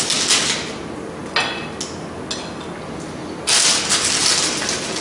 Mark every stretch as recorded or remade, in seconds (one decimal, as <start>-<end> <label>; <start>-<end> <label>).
0.0-5.0 recorded